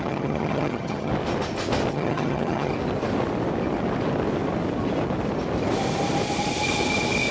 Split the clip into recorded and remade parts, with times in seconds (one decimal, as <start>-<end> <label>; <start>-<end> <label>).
0.0-1.1 remade; 1.1-1.9 recorded; 1.9-2.7 remade; 2.7-7.3 recorded